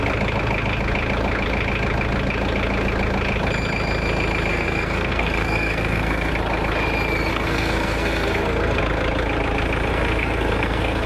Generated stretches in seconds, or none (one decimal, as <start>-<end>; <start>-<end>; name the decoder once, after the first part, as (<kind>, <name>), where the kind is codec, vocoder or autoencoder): 4.5-6.3 (codec, SNAC); 7.3-8.8; 9.9-11.1